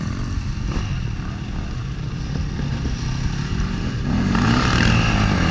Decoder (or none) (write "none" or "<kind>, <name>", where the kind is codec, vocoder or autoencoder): none